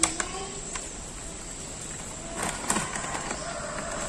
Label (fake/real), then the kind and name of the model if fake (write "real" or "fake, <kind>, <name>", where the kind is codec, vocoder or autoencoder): real